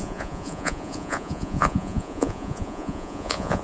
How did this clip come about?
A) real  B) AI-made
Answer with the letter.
B